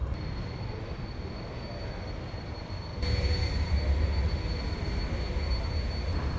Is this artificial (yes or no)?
no